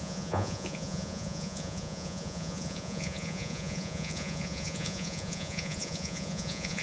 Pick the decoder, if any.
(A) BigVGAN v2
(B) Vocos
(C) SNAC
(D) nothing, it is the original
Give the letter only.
B